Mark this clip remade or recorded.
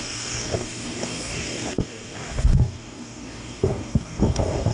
remade